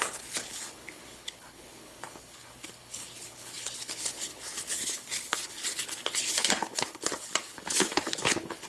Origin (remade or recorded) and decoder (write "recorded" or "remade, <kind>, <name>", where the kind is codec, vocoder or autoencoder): remade, codec, HILCodec